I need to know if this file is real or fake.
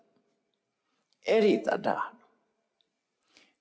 real